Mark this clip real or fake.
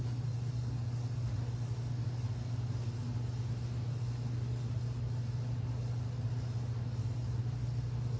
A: real